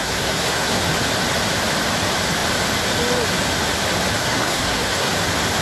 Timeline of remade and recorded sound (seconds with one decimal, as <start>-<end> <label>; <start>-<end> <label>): 0.0-0.8 remade; 0.8-4.2 recorded; 4.2-5.1 remade; 5.1-5.6 recorded